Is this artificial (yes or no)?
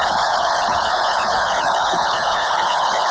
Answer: yes